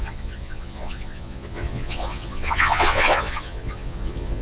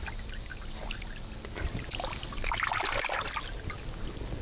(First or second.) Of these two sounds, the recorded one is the second